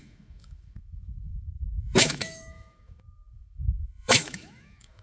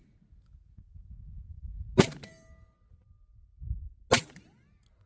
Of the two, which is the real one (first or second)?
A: second